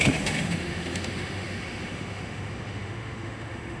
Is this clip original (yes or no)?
no